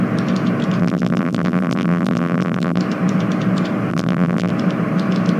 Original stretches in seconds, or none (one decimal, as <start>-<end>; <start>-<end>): 0.0-0.8; 2.8-3.9; 4.5-5.4